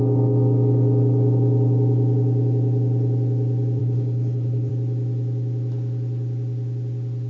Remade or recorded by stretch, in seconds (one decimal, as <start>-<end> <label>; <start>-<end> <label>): 0.0-3.8 recorded; 3.8-4.7 remade; 4.7-7.3 recorded